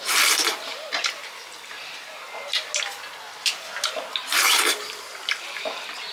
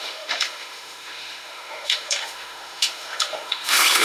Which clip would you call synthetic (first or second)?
second